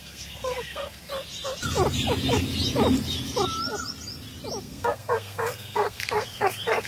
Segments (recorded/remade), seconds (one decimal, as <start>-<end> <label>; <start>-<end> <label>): 0.0-1.1 remade; 1.1-4.6 recorded; 4.6-6.9 remade